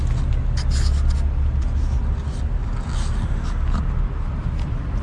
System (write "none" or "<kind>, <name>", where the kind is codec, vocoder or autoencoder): none